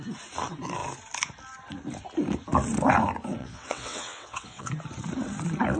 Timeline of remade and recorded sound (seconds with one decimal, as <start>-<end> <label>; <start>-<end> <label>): 0.0-3.4 recorded; 3.4-4.7 remade; 4.7-5.8 recorded